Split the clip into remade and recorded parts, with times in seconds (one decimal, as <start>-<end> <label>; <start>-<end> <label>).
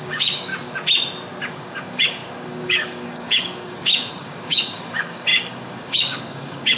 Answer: 0.0-0.5 remade; 0.5-1.5 recorded; 1.5-6.8 remade